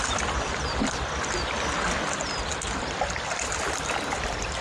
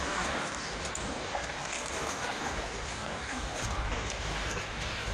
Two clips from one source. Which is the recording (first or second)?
first